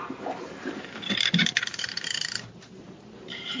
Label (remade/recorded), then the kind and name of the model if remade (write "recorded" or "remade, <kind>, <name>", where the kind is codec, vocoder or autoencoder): remade, vocoder, BigVGAN v2